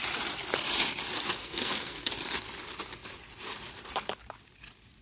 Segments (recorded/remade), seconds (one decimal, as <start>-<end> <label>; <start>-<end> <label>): 0.0-1.4 recorded; 1.4-2.1 remade; 2.1-5.0 recorded